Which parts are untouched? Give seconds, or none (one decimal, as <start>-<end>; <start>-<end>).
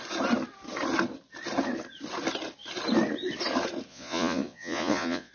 0.0-3.9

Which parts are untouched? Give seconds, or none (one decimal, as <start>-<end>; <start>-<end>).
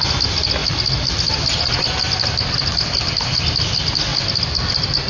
0.0-5.1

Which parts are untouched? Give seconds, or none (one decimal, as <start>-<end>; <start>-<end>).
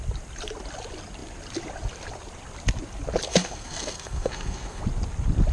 0.0-3.3; 4.8-5.5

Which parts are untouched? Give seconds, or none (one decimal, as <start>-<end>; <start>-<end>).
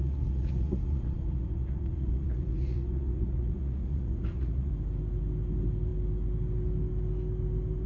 4.7-7.9